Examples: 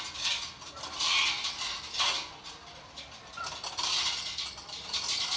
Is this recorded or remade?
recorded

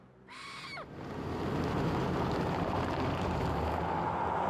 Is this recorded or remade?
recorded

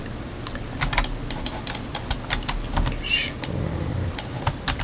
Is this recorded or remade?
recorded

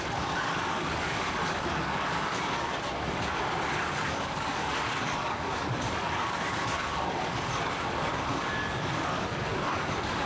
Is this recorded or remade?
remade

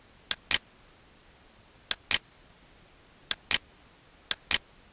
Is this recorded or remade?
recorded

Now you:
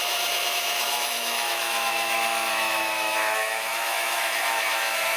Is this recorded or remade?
remade